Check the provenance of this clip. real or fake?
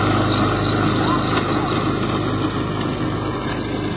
real